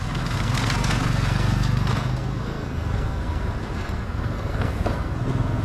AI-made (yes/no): yes